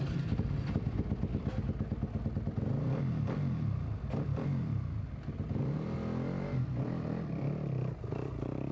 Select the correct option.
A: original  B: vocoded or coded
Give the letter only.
A